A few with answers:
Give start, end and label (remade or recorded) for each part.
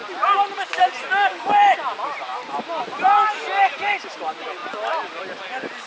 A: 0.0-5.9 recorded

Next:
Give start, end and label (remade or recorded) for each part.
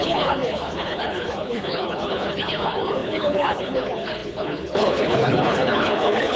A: 0.0-6.4 remade